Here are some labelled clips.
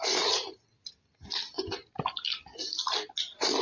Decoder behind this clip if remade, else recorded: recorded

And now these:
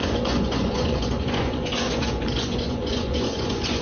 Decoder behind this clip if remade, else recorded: remade, vocoder, Vocos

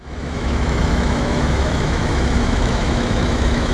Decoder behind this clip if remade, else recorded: remade, autoencoder, DAC-VAE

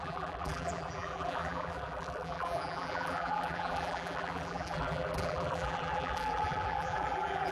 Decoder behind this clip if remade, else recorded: remade, vocoder, BigVGAN v2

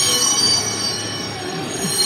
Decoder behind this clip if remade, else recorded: remade, codec, DAC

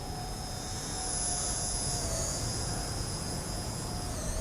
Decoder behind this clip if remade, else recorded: remade, vocoder, Vocos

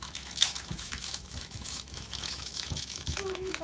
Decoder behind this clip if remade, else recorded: remade, autoencoder, DAC-VAE